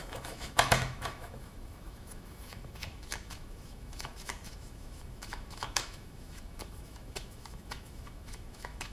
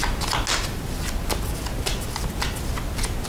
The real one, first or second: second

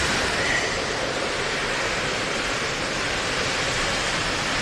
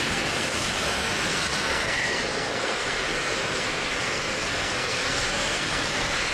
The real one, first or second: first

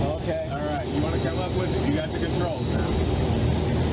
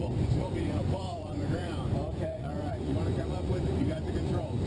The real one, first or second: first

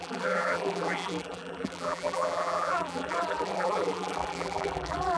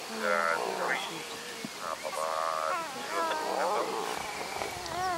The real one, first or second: second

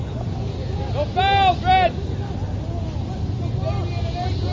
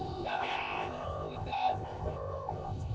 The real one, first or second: first